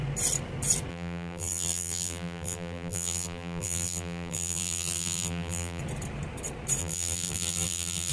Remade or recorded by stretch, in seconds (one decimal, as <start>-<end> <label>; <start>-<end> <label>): 0.0-0.9 recorded; 0.9-5.8 remade; 5.8-6.8 recorded; 6.8-8.1 remade